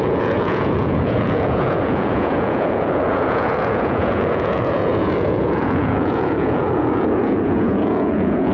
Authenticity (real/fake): fake